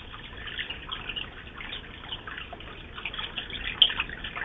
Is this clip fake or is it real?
real